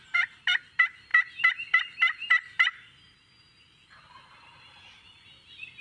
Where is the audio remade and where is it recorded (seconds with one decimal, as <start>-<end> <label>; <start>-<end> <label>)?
0.0-5.8 recorded